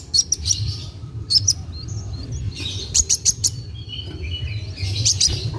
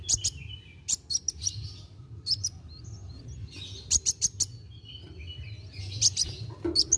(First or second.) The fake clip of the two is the first